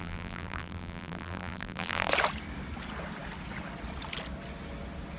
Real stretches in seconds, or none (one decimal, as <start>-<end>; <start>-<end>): 2.1-5.2